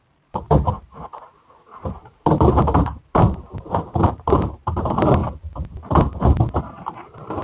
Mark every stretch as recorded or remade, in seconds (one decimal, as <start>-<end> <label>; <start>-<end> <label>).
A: 0.0-5.2 remade; 5.2-6.6 recorded; 6.6-7.4 remade